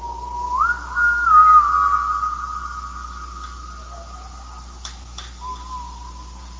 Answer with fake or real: real